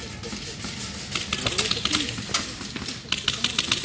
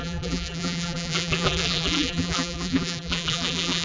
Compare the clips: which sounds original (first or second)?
first